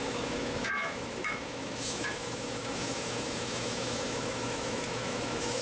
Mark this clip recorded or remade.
remade